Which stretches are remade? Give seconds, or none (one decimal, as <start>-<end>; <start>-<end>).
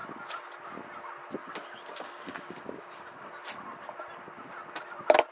1.4-3.3